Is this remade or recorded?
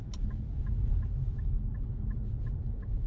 recorded